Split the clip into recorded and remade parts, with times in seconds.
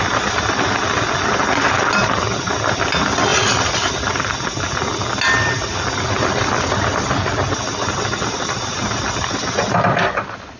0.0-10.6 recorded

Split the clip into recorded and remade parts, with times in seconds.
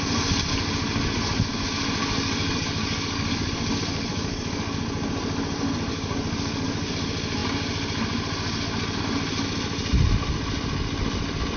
0.0-2.0 recorded; 2.0-3.5 remade; 3.5-4.1 recorded; 4.1-4.8 remade; 4.8-5.9 recorded; 5.9-6.9 remade; 6.9-11.6 recorded